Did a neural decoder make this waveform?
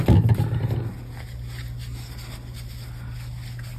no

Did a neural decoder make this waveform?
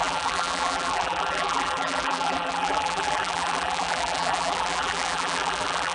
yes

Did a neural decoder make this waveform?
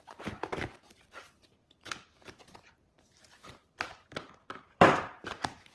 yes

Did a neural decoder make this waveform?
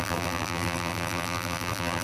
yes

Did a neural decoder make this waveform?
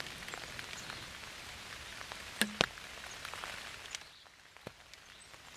no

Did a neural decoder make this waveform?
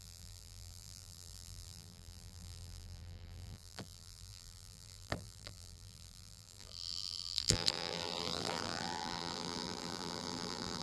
yes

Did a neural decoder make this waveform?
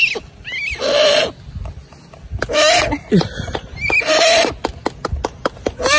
no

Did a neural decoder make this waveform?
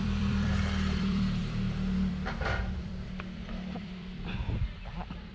yes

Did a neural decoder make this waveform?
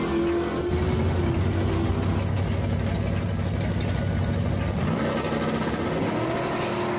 no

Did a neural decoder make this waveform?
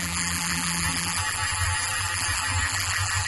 yes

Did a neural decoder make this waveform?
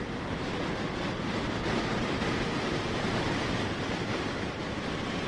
yes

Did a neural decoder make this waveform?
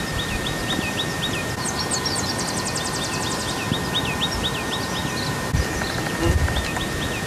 no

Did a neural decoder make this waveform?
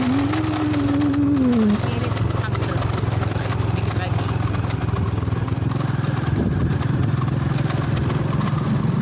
no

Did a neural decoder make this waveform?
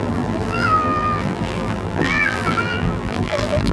yes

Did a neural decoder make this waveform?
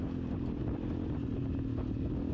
no